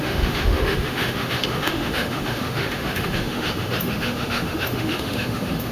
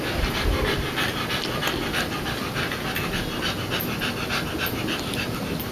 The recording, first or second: second